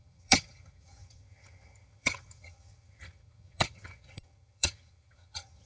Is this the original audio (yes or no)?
no